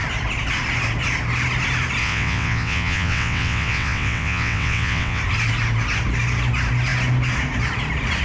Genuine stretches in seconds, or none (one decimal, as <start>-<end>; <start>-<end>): 0.0-2.0; 5.2-8.2

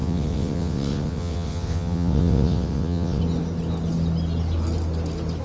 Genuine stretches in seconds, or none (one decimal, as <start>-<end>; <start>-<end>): 3.2-5.4

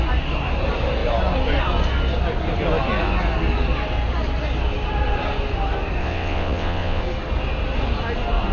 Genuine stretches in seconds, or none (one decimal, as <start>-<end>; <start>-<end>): 0.0-6.0; 7.0-8.5

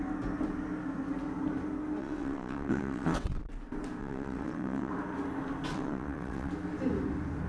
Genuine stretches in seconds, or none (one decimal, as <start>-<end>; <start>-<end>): 0.0-2.0; 3.4-4.0; 4.9-5.7; 6.5-7.5

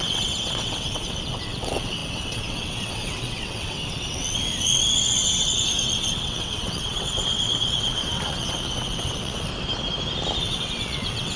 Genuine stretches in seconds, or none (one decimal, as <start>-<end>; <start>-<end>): 9.5-10.4

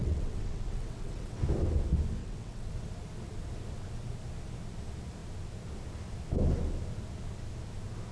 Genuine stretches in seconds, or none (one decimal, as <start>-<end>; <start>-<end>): 1.4-2.2; 2.7-8.1

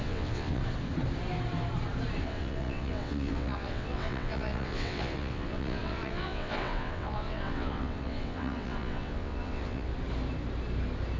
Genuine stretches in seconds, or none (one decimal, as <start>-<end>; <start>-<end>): 0.6-2.2; 9.9-11.2

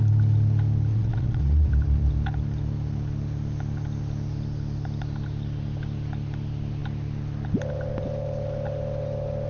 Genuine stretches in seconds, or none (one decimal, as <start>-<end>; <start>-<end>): 0.0-0.9; 1.7-9.5